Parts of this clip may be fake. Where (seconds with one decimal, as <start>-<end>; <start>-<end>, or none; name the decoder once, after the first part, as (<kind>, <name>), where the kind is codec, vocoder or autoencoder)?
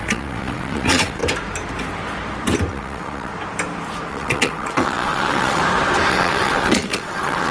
0.0-1.2 (vocoder, WaveNeXt); 2.7-3.3; 4.1-5.6; 6.1-7.5